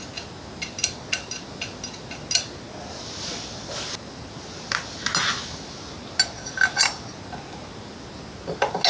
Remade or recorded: recorded